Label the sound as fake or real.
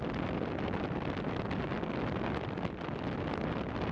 real